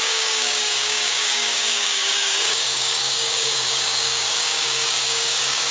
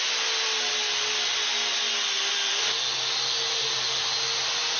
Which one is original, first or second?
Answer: second